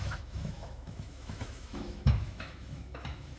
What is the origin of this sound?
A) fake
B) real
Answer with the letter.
A